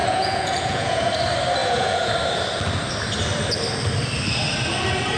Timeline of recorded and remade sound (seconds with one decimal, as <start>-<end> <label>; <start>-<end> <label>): 0.0-1.1 remade; 1.1-1.6 recorded; 1.6-2.1 remade; 2.1-5.2 recorded